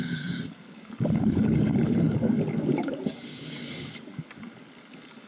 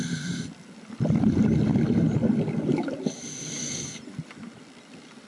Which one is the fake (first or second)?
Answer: first